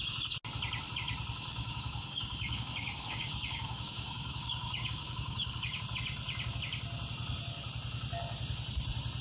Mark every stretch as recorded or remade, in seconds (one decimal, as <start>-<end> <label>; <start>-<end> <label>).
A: 0.0-1.5 recorded; 1.5-5.8 remade; 5.8-9.2 recorded